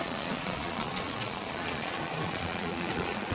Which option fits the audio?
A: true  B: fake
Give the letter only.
B